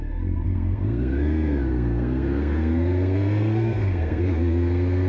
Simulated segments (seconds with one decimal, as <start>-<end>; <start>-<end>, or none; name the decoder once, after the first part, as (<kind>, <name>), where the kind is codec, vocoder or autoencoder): 0.0-5.1 (codec, SNAC)